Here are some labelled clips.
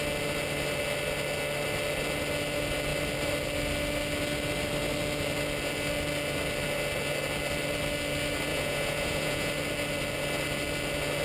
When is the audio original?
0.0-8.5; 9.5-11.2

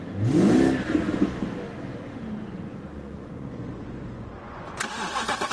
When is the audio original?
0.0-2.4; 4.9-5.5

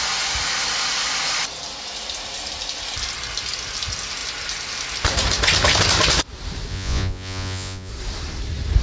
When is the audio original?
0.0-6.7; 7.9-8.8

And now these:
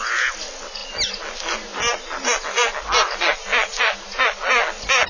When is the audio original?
0.0-5.1

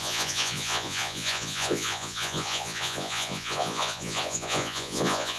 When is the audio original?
none